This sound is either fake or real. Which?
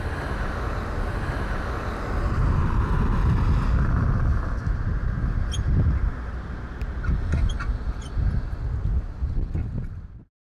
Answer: real